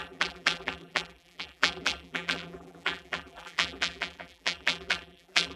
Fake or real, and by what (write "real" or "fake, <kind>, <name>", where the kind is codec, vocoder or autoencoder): fake, vocoder, BigVGAN v2